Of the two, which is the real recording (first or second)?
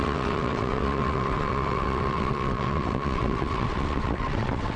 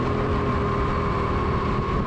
second